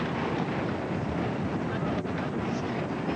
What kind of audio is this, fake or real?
real